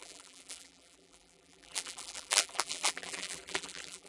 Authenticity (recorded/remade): remade